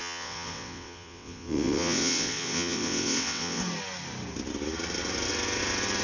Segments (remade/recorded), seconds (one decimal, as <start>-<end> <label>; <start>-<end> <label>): 0.0-3.6 remade; 3.6-6.0 recorded